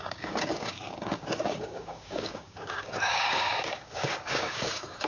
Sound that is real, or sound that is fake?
fake